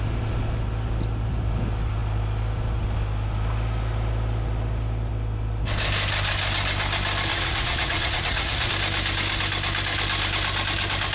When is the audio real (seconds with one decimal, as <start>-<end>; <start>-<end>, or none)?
0.0-7.3; 8.7-11.1